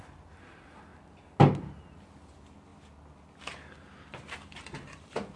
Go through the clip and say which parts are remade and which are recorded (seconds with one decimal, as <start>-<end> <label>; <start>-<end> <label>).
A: 0.0-5.4 recorded